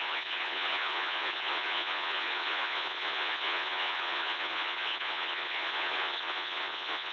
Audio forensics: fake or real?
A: fake